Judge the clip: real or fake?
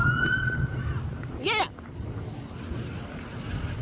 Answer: real